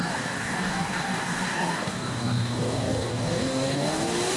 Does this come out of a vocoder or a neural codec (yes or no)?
yes